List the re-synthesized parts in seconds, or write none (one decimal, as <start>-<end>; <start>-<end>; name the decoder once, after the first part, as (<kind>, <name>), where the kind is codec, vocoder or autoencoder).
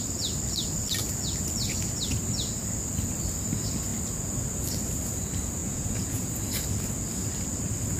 5.6-6.3 (vocoder, Vocos)